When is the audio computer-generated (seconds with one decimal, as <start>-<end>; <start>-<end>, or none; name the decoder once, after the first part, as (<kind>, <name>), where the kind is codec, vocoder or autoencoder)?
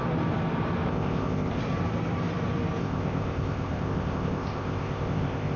0.9-1.6 (codec, ZipCodec); 2.8-5.6